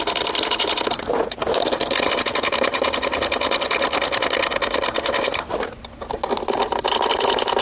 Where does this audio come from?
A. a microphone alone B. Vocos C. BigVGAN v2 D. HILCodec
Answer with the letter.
A